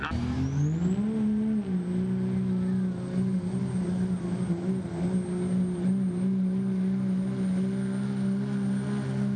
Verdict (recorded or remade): recorded